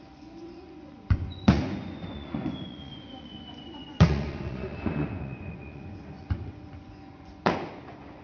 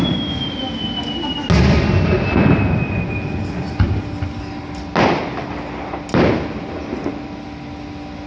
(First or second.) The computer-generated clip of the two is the first